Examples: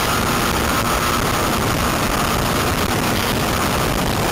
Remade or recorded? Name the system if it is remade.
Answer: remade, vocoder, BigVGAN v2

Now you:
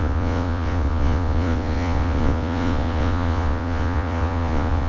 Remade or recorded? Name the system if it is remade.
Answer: remade, vocoder, Vocos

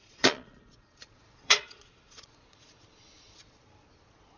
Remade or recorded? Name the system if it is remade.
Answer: remade, vocoder, Vocos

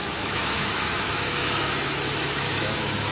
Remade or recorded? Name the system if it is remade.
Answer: remade, autoencoder, DAC-VAE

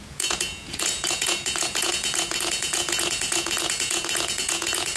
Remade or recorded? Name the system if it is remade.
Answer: remade, vocoder, Vocos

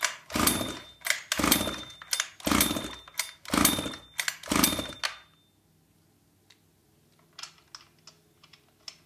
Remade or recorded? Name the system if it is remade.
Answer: recorded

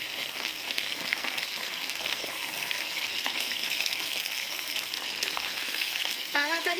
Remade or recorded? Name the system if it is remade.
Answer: remade, codec, SNAC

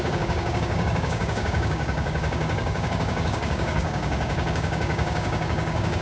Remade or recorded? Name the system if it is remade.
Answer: remade, codec, DAC